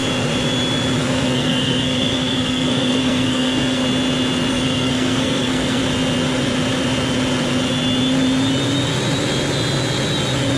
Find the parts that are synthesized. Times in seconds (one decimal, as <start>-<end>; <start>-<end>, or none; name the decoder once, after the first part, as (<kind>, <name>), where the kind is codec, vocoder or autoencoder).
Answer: 1.0-3.8 (codec, SNAC); 4.5-5.8